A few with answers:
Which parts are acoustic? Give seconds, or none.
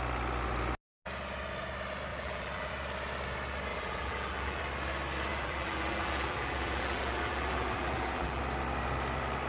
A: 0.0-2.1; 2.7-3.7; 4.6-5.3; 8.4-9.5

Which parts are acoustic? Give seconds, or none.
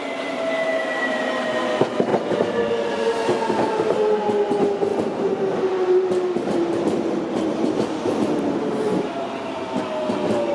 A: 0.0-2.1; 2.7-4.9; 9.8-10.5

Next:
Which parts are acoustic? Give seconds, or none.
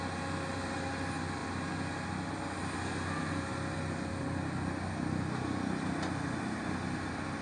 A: 0.0-7.4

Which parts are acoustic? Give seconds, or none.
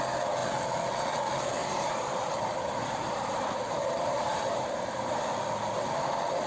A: 0.0-1.6; 5.2-6.5